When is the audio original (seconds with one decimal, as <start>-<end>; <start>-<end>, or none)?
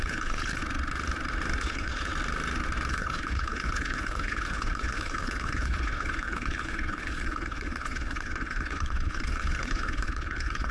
0.6-1.6; 2.1-2.9